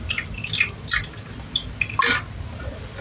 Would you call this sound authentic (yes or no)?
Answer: yes